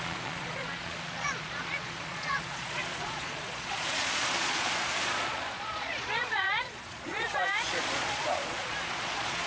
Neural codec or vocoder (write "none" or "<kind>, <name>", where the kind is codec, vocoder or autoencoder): vocoder, Vocos